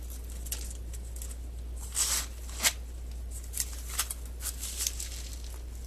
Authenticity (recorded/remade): recorded